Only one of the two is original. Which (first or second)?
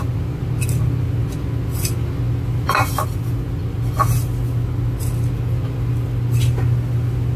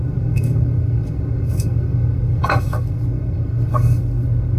first